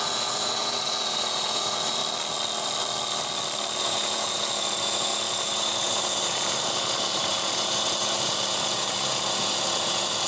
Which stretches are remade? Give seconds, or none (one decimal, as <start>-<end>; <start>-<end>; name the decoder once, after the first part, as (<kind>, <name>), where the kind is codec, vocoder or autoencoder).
0.0-2.0 (vocoder, Vocos); 3.8-10.3